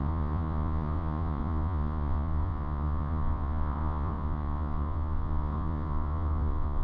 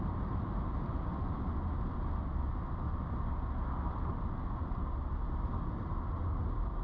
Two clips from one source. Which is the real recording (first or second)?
second